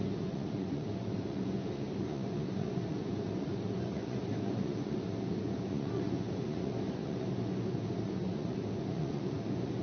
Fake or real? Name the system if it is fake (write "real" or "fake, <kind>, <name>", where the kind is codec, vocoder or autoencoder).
fake, vocoder, Vocos